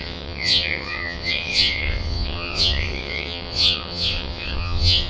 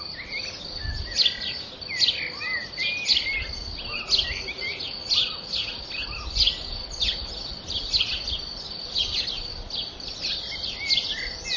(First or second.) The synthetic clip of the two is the first